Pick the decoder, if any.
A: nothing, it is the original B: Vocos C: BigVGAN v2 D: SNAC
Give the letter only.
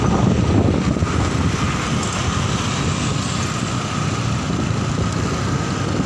A